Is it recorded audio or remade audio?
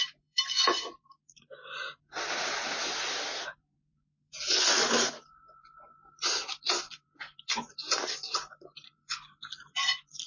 remade